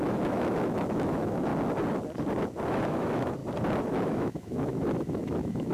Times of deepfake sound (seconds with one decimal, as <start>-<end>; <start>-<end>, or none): 0.0-1.5; 2.7-3.4; 3.9-5.7